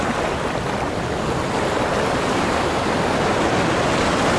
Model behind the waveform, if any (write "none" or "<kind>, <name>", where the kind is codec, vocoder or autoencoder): none